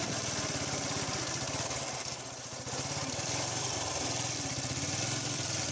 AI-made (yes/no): yes